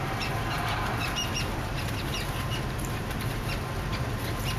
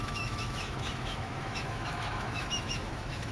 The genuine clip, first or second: first